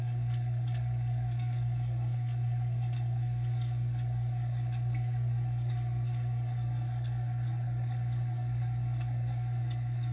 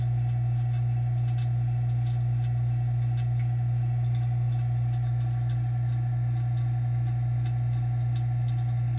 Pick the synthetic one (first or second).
first